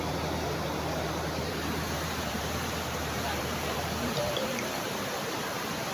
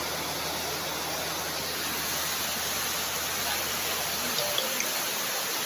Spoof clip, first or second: first